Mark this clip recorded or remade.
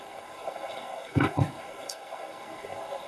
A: remade